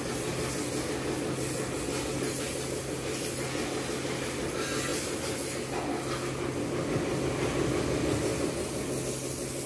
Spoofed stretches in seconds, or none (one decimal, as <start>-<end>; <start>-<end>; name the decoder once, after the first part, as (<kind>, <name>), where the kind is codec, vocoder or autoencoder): none